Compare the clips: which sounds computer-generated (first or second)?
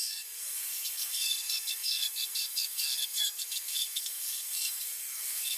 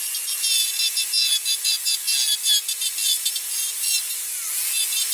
first